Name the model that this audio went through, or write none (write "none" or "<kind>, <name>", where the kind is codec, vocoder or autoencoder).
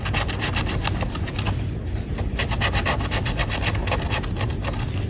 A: none